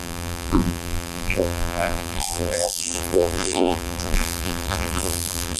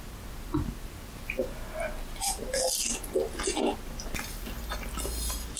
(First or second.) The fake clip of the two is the first